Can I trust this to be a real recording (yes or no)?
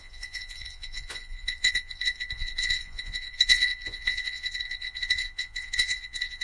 no